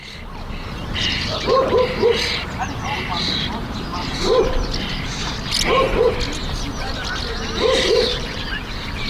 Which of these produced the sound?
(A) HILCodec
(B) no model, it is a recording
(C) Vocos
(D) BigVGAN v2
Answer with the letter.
B